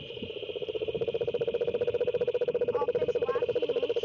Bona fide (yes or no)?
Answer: yes